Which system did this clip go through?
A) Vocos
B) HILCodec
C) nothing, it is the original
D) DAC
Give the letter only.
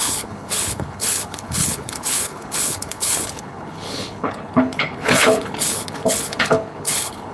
B